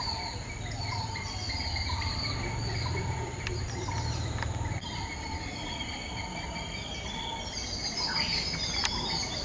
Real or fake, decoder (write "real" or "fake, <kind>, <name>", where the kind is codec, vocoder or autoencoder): fake, vocoder, BigVGAN v2